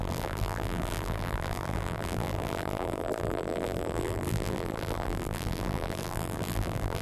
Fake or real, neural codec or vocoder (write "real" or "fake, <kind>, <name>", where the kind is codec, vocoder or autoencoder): fake, vocoder, BigVGAN v2